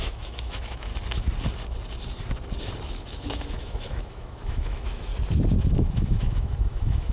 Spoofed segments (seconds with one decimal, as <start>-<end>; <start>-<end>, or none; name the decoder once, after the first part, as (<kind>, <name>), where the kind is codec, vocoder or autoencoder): 0.0-0.9 (autoencoder, DAC-VAE); 2.9-5.1; 5.6-7.1